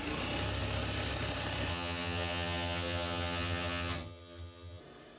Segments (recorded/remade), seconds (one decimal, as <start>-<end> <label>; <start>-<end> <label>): 0.0-1.7 recorded; 1.7-4.8 remade; 4.8-5.2 recorded

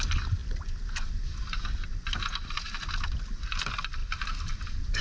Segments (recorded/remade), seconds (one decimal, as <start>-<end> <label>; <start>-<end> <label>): 0.0-5.0 recorded

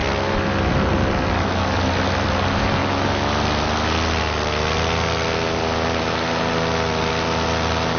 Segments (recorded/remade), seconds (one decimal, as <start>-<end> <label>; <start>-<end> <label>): 0.0-8.0 recorded

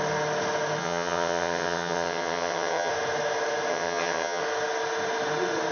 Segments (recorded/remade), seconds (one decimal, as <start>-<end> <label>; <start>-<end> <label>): 0.0-0.8 recorded; 0.8-2.9 remade; 2.9-3.7 recorded; 3.7-4.4 remade; 4.4-5.7 recorded

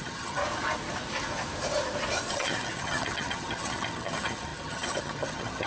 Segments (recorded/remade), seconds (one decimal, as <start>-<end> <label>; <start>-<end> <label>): 0.0-0.4 remade; 0.4-2.3 recorded; 2.3-5.7 remade

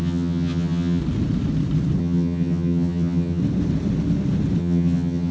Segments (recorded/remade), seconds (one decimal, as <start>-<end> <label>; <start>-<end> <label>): 0.0-1.0 remade; 1.0-2.0 recorded; 2.0-3.4 remade; 3.4-4.6 recorded; 4.6-5.3 remade

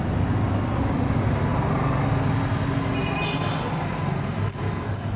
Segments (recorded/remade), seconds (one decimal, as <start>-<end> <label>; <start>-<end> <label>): 0.0-5.2 recorded

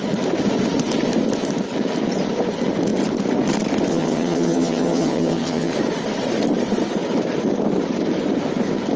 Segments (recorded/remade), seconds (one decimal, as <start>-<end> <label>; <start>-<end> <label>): 0.0-3.9 recorded; 3.9-5.7 remade; 5.7-9.0 recorded